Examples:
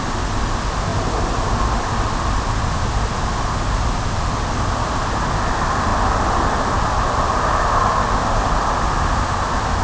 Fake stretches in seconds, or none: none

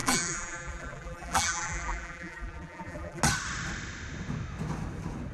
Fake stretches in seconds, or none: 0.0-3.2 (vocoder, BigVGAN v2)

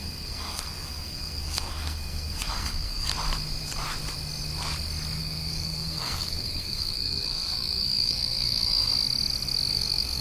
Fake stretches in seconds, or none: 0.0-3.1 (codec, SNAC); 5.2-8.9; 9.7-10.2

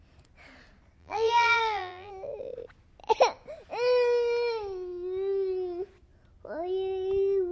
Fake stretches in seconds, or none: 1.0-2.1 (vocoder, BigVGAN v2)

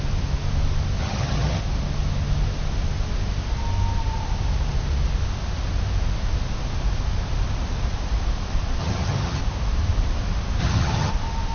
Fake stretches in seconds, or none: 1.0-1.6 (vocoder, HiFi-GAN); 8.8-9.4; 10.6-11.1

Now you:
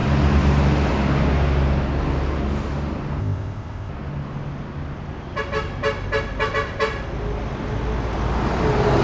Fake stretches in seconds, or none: 3.2-3.9 (codec, ZipCodec)

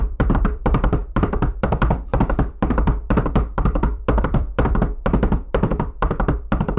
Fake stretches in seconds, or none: 0.0-6.8 (vocoder, BigVGAN v2)